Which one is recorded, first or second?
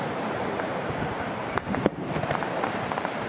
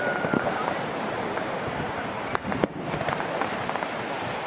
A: second